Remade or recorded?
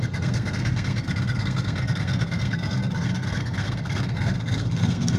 remade